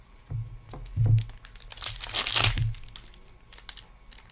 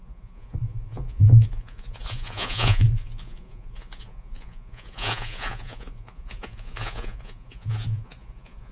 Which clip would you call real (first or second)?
first